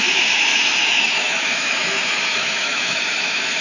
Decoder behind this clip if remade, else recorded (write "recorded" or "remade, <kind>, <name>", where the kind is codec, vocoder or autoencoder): remade, autoencoder, DAC-VAE